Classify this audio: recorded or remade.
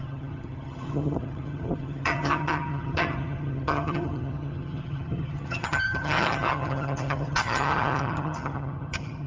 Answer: remade